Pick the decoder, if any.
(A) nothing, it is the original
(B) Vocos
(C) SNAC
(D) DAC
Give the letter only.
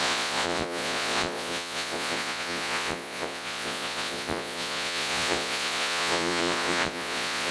B